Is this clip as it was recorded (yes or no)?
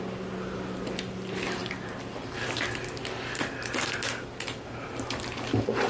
no